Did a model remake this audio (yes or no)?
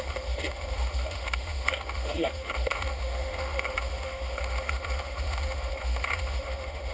yes